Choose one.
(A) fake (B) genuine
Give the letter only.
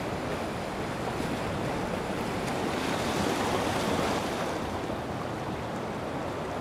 B